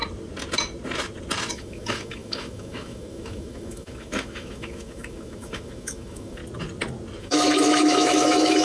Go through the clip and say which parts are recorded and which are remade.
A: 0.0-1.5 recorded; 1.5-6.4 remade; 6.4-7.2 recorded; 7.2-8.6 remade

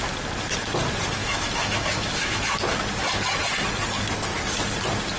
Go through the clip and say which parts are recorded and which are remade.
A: 0.0-1.2 recorded; 1.2-2.6 remade; 2.6-5.2 recorded

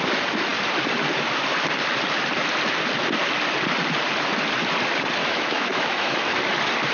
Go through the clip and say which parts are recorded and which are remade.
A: 0.0-5.2 recorded; 5.2-6.4 remade; 6.4-6.9 recorded

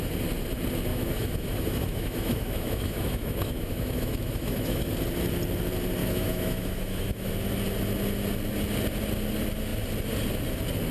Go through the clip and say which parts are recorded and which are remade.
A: 0.0-0.9 recorded; 0.9-4.9 remade; 4.9-6.0 recorded; 6.0-7.3 remade; 7.3-10.9 recorded

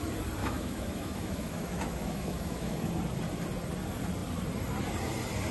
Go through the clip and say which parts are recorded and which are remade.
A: 0.0-0.4 recorded; 0.4-2.9 remade; 2.9-5.5 recorded